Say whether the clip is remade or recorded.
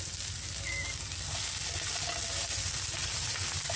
recorded